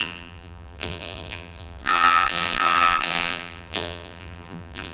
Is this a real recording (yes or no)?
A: no